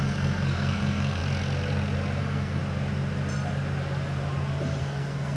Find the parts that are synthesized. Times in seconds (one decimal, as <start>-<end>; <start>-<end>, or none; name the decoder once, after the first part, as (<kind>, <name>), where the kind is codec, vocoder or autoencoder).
0.0-1.2 (codec, SNAC); 2.2-2.6; 4.8-5.4